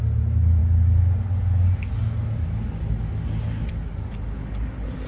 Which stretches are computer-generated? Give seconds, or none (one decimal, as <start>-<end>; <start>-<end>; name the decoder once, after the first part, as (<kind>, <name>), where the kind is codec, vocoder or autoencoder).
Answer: none